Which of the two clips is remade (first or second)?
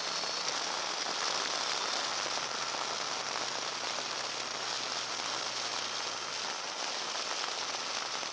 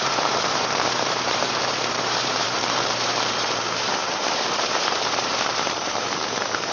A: second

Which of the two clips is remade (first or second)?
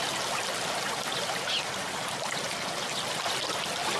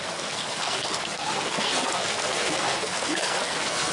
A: second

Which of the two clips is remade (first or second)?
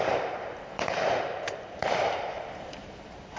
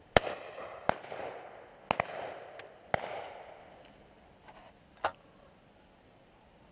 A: first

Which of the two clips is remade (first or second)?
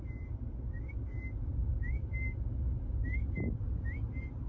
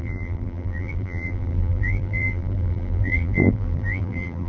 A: second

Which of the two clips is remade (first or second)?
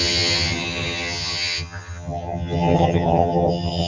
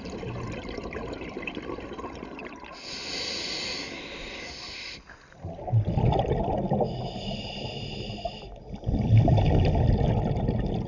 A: first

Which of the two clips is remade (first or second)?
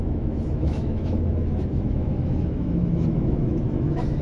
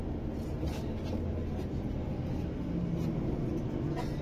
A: first